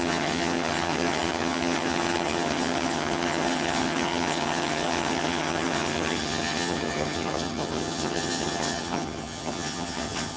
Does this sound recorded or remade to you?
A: remade